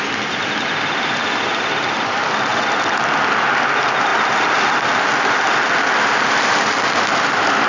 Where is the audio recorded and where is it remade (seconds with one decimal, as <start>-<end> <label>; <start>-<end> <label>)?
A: 0.0-7.7 recorded